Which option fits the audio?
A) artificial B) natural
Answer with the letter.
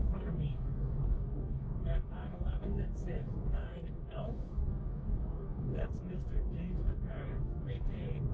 A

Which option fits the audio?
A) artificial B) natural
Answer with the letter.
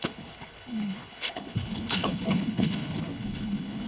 A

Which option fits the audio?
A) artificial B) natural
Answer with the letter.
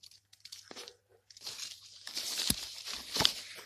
A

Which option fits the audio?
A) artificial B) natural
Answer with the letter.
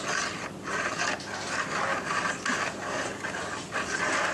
B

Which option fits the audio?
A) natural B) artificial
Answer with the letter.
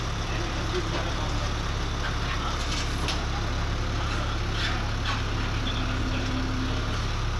A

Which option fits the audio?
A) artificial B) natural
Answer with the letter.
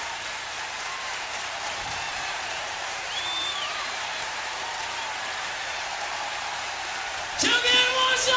A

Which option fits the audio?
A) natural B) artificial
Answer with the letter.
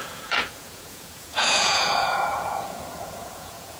B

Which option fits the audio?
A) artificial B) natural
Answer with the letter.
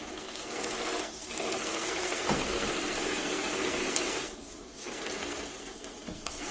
A